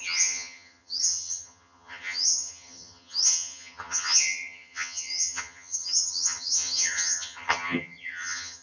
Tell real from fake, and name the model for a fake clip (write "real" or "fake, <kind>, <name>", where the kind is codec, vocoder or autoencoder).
fake, vocoder, HiFi-GAN